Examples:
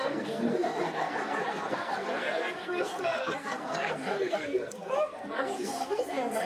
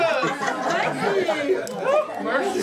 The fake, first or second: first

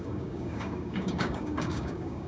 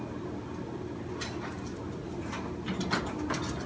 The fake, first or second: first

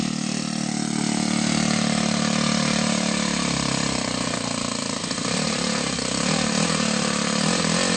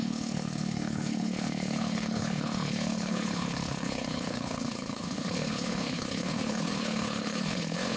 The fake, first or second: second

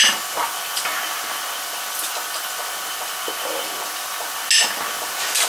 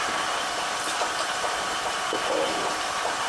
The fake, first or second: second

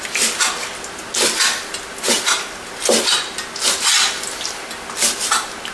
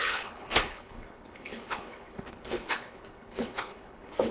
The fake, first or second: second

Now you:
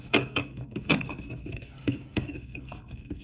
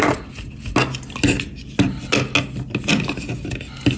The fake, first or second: first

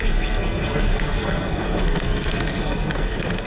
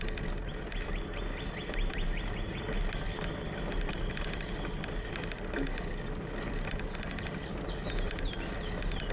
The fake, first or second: first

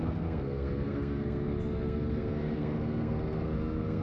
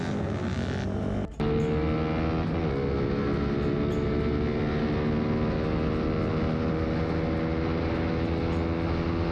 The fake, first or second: first